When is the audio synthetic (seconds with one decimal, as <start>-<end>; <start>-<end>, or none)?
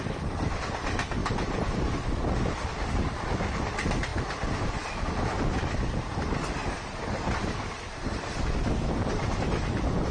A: 1.2-1.9; 6.6-7.2; 9.1-10.1